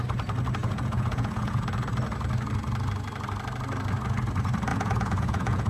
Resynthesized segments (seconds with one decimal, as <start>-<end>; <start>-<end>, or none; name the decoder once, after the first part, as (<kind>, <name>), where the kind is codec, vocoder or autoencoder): 0.6-1.6 (vocoder, Vocos); 4.7-5.7